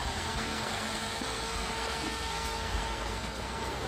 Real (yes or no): no